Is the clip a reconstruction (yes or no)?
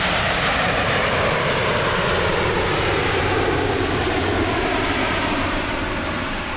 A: yes